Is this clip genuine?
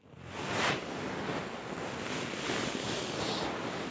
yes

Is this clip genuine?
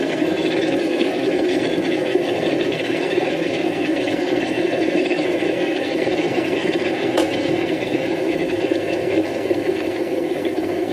no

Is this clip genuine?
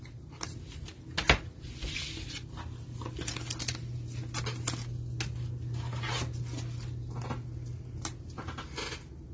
yes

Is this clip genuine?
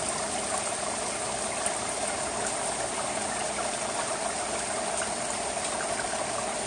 yes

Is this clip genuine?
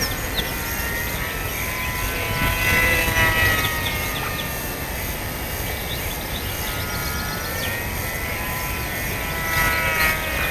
yes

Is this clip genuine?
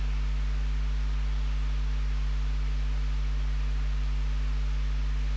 yes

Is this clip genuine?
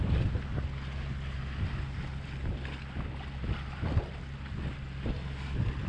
yes